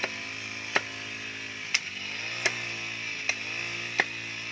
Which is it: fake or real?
real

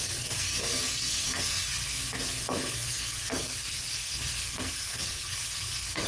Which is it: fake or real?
fake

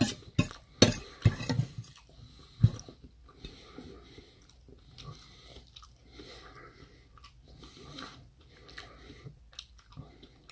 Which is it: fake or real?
real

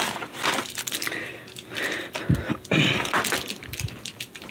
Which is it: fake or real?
real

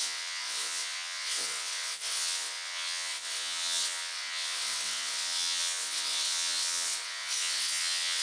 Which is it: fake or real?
fake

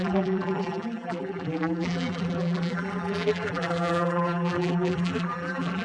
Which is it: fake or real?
fake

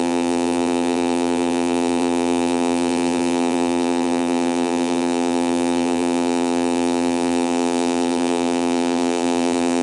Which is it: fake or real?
fake